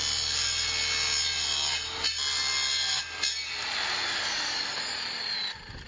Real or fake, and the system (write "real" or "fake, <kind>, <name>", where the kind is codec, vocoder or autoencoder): real